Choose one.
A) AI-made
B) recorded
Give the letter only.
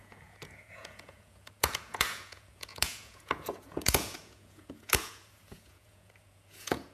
A